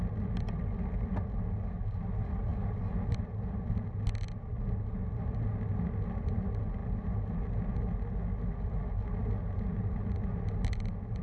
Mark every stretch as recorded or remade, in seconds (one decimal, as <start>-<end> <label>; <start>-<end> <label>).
0.0-11.2 recorded